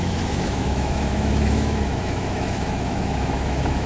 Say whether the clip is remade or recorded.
remade